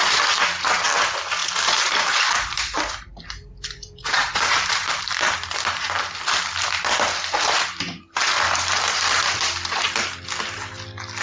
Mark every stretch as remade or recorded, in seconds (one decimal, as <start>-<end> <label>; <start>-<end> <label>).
0.0-1.4 recorded; 1.4-5.0 remade; 5.0-11.2 recorded